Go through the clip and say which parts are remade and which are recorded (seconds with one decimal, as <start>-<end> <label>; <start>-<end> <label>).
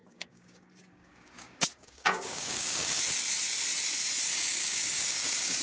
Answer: 0.0-3.0 remade; 3.0-4.3 recorded; 4.3-5.6 remade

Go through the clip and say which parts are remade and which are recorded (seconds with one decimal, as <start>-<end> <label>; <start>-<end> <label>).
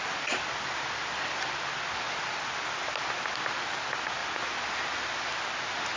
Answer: 0.0-6.0 recorded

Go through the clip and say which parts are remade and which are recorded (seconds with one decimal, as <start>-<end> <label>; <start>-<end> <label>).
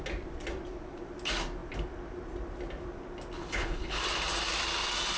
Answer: 0.0-3.4 recorded; 3.4-4.0 remade; 4.0-5.2 recorded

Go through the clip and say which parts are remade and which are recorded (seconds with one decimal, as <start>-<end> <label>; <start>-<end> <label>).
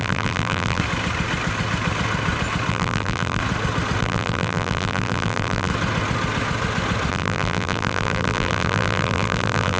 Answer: 0.0-0.8 remade; 0.8-2.7 recorded; 2.7-3.4 remade; 3.4-4.0 recorded; 4.0-5.7 remade; 5.7-7.1 recorded; 7.1-9.8 remade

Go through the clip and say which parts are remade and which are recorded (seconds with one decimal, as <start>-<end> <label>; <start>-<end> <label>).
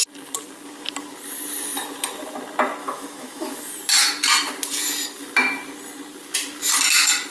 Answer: 0.0-2.8 recorded; 2.8-3.7 remade; 3.7-7.3 recorded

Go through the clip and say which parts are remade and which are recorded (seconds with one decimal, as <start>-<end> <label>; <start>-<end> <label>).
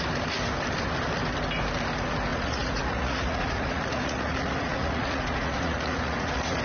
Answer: 0.0-2.3 recorded; 2.3-6.6 remade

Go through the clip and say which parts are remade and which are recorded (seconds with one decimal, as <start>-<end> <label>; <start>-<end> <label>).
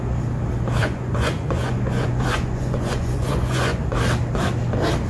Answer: 0.0-0.8 recorded; 0.8-3.8 remade; 3.8-5.1 recorded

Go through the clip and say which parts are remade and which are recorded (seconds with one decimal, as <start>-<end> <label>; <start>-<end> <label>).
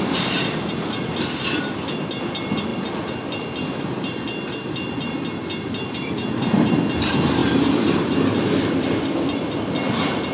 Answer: 0.0-10.3 recorded